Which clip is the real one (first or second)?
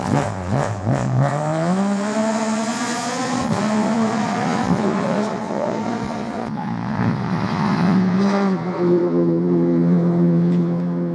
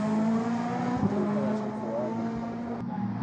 second